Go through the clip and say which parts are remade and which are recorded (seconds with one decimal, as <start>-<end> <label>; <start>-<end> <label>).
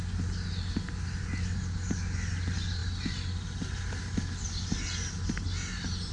0.0-6.1 recorded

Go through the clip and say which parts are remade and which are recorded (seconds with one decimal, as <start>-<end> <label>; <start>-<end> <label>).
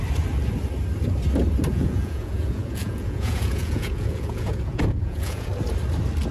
0.0-1.7 recorded; 1.7-5.5 remade; 5.5-6.3 recorded